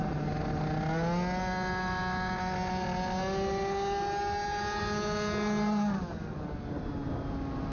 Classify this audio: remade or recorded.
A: recorded